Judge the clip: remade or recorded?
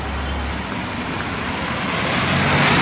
recorded